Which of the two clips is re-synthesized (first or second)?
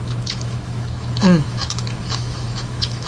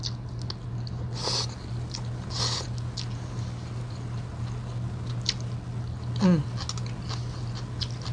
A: first